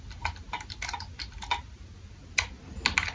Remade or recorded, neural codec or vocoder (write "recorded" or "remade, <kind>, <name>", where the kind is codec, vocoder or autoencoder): recorded